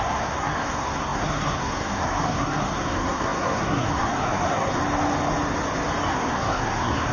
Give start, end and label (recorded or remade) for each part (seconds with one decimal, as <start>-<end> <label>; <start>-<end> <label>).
0.0-4.8 remade; 4.8-6.1 recorded; 6.1-7.1 remade

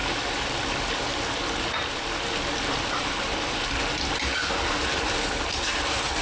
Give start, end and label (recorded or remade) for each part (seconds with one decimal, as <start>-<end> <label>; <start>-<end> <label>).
0.0-2.6 recorded; 2.6-6.2 remade

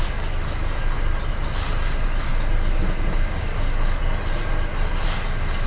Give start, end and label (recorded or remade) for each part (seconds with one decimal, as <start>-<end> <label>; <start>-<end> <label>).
0.0-5.7 recorded